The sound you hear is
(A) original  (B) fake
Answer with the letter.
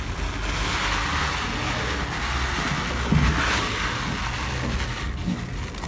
A